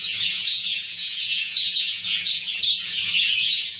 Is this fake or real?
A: fake